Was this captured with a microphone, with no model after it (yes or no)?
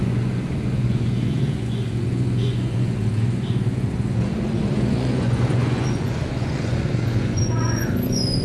no